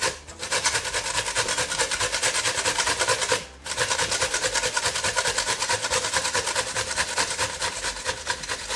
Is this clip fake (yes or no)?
no